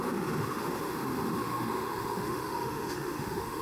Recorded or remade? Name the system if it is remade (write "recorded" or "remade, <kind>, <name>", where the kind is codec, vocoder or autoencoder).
remade, autoencoder, DAC-VAE